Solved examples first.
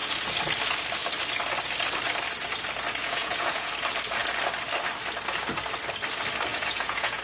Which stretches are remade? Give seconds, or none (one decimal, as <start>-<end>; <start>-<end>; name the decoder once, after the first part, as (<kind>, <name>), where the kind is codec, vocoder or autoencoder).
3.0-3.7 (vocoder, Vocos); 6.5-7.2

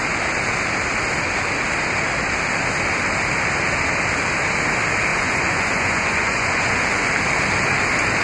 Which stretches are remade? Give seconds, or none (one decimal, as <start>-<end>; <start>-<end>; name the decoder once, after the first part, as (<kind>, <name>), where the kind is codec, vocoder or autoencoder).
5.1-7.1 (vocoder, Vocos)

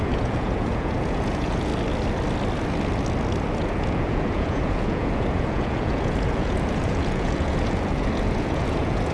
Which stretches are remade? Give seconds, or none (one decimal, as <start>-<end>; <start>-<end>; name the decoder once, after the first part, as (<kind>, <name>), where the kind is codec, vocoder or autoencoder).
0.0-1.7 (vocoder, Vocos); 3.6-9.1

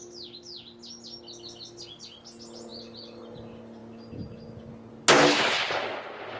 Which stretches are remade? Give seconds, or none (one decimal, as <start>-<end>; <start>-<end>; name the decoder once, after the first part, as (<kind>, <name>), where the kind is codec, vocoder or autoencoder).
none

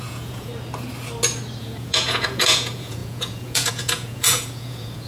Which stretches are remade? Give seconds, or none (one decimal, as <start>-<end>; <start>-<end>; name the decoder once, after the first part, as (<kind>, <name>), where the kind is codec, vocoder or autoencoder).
0.0-0.5 (vocoder, Vocos); 1.6-5.1

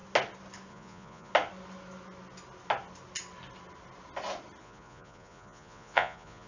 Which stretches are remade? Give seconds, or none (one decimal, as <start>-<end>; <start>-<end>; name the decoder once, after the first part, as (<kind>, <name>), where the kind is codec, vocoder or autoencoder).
0.7-1.3 (vocoder, Vocos); 4.6-6.5

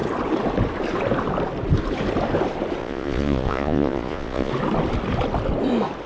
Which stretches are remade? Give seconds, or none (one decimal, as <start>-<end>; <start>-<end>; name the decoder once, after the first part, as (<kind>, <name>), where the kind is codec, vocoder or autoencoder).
2.8-4.5 (vocoder, Vocos)